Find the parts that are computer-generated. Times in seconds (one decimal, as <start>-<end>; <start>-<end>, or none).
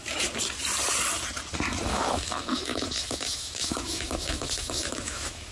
1.9-5.5